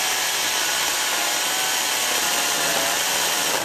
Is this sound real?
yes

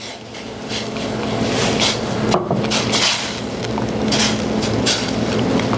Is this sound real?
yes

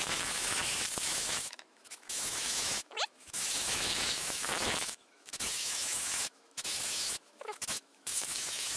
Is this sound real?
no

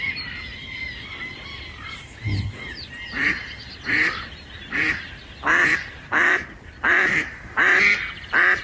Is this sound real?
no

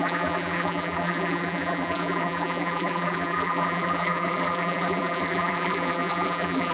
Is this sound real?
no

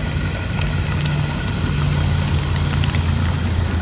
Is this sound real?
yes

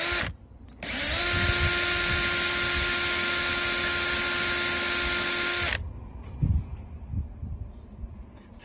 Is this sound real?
yes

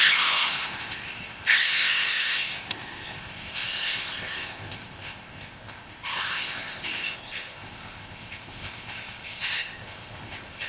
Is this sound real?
no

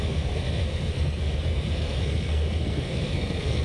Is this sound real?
no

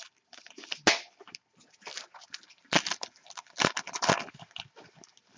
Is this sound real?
yes